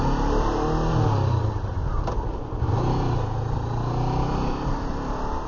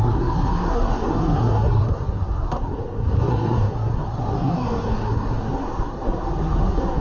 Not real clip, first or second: second